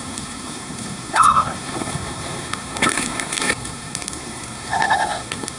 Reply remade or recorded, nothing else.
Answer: remade